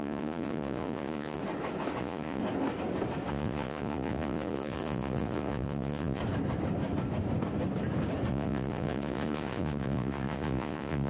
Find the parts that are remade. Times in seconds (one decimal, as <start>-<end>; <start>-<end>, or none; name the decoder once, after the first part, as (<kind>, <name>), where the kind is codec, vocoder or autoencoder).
0.0-1.4 (vocoder, Vocos); 2.0-2.4; 3.3-6.2; 8.3-11.1